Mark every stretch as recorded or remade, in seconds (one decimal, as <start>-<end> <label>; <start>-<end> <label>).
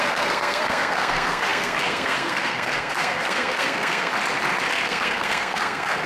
0.0-4.1 remade; 4.1-4.7 recorded; 4.7-6.1 remade